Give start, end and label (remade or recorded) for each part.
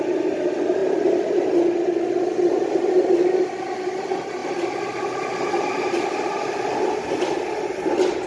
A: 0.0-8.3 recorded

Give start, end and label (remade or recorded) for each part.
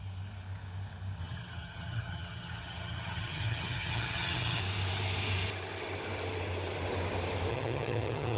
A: 0.0-1.2 recorded; 1.2-4.6 remade; 4.6-7.5 recorded; 7.5-8.4 remade